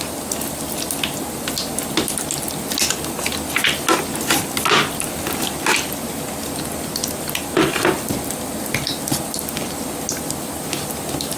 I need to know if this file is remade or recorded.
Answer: recorded